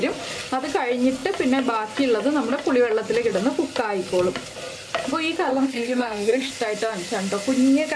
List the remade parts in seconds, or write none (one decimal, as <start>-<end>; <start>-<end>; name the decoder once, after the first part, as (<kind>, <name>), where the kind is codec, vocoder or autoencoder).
5.5-6.5 (codec, SNAC)